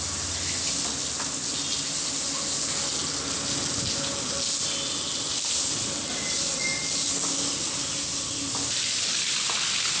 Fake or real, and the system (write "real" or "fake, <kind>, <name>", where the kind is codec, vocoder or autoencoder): real